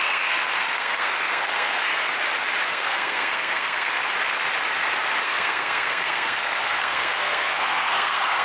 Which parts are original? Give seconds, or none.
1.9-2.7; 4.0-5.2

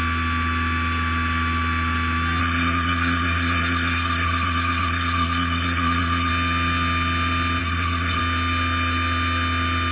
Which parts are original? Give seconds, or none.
0.0-2.4; 6.3-7.6; 8.2-9.9

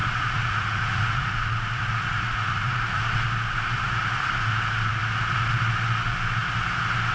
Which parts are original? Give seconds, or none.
3.0-7.1

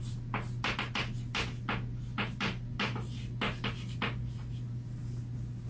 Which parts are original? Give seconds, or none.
0.0-5.7

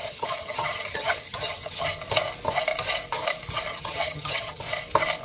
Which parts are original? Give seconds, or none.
2.0-3.7; 4.6-5.2

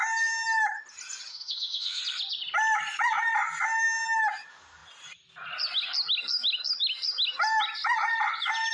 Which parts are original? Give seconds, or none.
0.0-1.3; 2.0-8.7